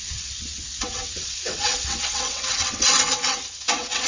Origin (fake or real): fake